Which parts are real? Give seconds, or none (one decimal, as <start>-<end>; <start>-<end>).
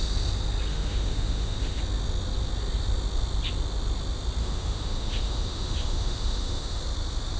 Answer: 0.0-0.7; 1.8-4.4; 6.8-7.4